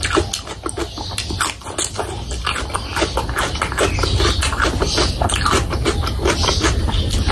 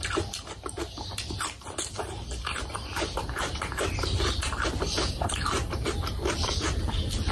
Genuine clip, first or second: first